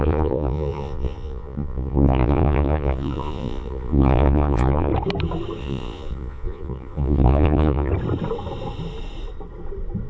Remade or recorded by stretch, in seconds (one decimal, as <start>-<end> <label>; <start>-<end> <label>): 0.0-4.9 remade; 4.9-5.6 recorded; 5.6-7.9 remade; 7.9-10.1 recorded